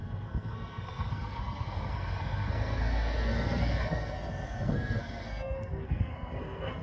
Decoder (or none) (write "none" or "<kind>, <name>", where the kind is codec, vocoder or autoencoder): codec, SNAC